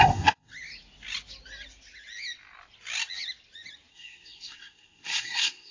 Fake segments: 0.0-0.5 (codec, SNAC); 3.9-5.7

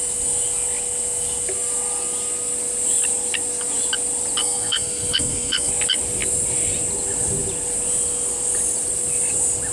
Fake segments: 4.4-5.7 (codec, SNAC)